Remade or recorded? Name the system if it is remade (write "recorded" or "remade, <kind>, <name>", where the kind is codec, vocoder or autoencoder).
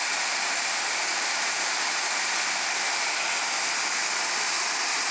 remade, vocoder, BigVGAN v2